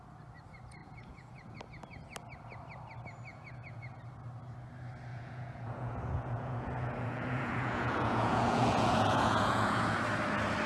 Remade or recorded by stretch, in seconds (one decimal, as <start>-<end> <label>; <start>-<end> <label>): 0.0-0.8 recorded; 0.8-1.6 remade; 1.6-3.3 recorded; 3.3-4.0 remade; 4.0-5.1 recorded; 5.1-10.0 remade; 10.0-10.7 recorded